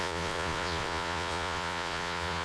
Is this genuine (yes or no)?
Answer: no